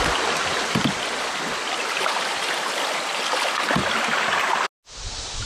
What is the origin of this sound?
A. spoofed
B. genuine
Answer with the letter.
B